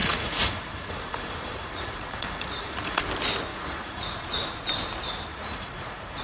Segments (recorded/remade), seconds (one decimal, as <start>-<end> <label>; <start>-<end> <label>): 0.0-3.0 remade; 3.0-3.5 recorded; 3.5-4.3 remade; 4.3-5.3 recorded; 5.3-6.2 remade